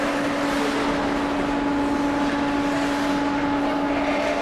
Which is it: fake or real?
real